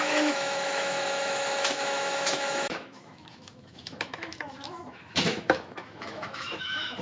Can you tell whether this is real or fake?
fake